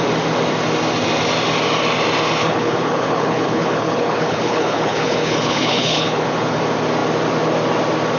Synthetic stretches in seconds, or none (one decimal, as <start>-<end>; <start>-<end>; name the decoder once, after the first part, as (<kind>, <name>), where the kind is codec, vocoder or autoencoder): 2.4-6.6 (codec, HILCodec)